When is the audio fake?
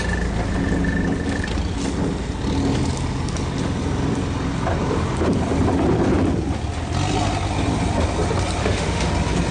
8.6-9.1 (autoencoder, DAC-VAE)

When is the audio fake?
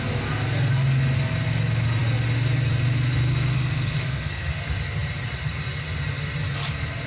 3.3-4.5 (codec, SNAC)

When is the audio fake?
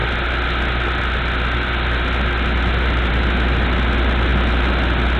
none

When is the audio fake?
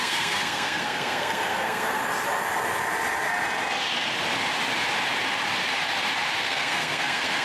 0.0-2.0 (codec, SNAC); 6.4-7.4